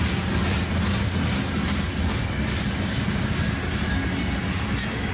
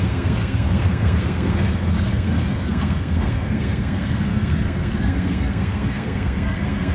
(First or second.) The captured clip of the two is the first